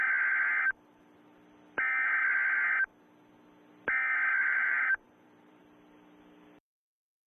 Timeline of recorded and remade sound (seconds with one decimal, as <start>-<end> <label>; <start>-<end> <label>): 0.0-4.4 recorded; 4.4-5.6 remade; 5.6-7.3 recorded